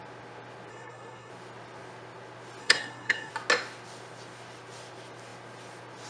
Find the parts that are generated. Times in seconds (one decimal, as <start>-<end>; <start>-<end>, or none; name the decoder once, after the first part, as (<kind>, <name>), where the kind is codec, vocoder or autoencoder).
0.7-1.3 (codec, SNAC); 2.6-3.3